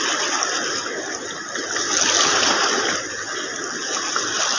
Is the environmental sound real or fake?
real